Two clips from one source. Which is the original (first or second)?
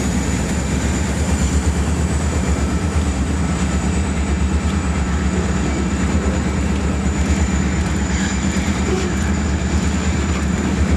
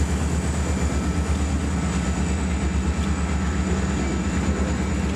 second